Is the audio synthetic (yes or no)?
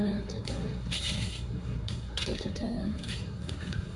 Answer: yes